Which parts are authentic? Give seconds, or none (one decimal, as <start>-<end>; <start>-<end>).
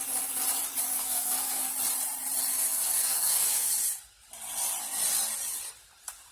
0.0-0.9; 1.7-2.5; 3.7-6.3